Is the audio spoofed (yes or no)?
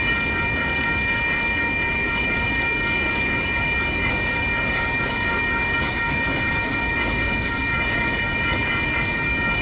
yes